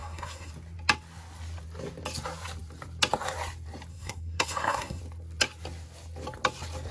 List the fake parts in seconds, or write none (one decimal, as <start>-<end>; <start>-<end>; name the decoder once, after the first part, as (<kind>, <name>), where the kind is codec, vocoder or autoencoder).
0.0-0.5 (codec, SNAC); 3.9-5.0